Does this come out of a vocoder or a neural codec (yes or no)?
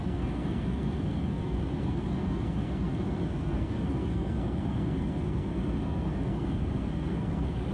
yes